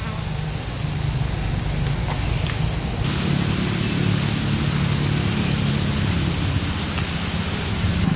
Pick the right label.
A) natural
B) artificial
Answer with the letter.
A